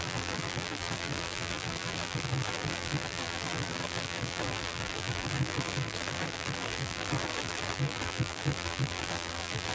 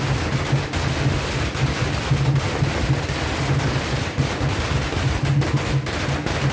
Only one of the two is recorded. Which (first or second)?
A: second